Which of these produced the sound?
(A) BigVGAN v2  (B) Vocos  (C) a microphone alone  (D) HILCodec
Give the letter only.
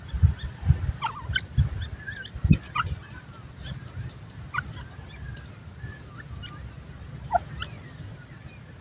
C